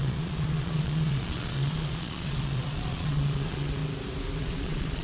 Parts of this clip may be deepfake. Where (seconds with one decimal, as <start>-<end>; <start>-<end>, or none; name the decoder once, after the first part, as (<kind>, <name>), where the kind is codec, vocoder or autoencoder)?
0.0-3.8 (vocoder, Vocos); 4.4-5.0